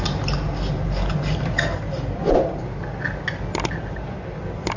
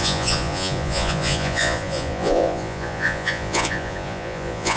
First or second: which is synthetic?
second